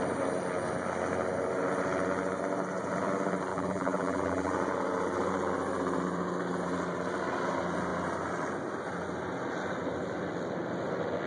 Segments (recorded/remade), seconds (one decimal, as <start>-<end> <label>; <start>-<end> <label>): 0.0-3.5 recorded; 3.5-4.5 remade; 4.5-11.3 recorded